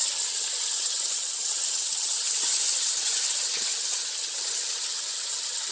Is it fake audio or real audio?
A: fake